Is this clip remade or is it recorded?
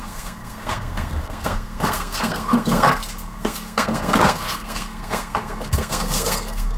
remade